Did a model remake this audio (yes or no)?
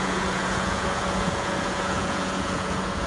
yes